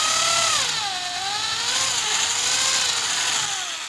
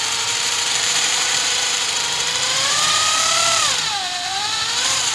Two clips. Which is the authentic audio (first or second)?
first